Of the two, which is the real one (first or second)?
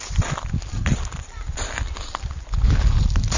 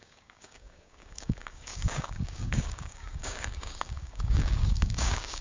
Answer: first